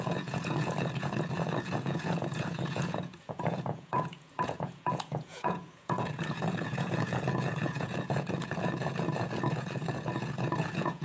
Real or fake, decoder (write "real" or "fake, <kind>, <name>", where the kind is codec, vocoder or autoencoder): fake, vocoder, Vocos